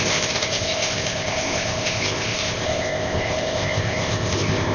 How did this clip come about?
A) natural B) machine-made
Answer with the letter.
B